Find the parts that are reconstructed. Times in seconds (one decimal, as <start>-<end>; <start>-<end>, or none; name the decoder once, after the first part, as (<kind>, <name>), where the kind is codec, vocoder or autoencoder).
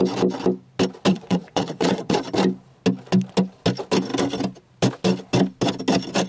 1.1-2.2 (vocoder, Vocos)